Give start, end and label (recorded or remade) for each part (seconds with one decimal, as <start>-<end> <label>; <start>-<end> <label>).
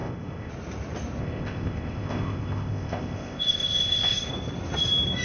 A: 0.0-0.5 remade; 0.5-1.2 recorded; 1.2-4.3 remade; 4.3-5.2 recorded